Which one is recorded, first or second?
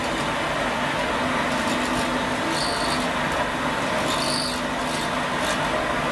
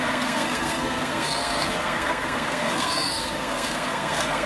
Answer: first